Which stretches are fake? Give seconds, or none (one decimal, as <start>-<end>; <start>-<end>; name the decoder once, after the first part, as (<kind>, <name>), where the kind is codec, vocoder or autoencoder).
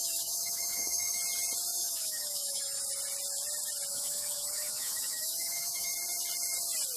0.0-1.2 (autoencoder, DAC-VAE); 1.8-2.8; 3.9-5.9